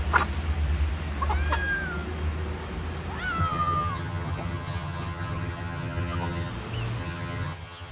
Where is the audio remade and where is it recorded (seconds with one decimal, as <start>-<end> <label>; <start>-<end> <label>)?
0.0-3.4 recorded; 3.4-6.5 remade; 6.5-7.0 recorded; 7.0-7.9 remade